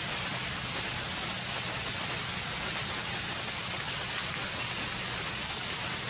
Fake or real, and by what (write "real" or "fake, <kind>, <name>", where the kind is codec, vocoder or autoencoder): real